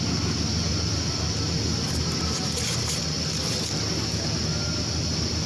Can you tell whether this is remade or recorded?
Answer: remade